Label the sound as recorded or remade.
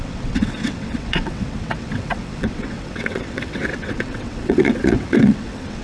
remade